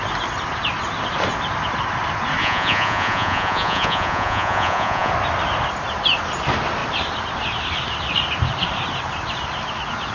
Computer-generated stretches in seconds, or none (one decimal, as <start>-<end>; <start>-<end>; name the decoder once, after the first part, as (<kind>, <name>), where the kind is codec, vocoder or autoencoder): 2.4-5.1 (vocoder, Vocos)